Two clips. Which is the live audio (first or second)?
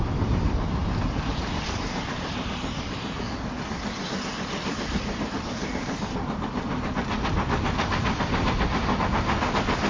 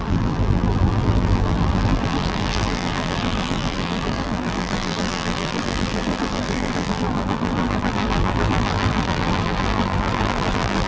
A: first